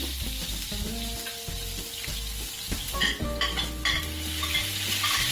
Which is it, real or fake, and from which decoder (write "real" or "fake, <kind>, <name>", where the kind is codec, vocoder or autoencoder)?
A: real